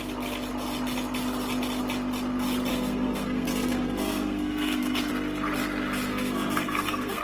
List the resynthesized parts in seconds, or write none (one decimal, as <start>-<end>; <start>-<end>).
2.7-5.1; 6.1-7.2